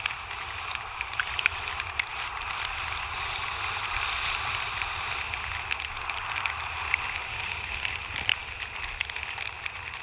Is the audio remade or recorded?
recorded